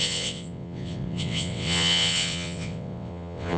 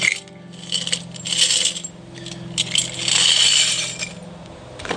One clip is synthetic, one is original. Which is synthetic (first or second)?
first